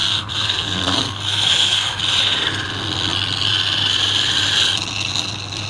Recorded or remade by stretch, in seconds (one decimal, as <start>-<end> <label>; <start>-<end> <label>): 0.0-2.0 remade; 2.0-5.7 recorded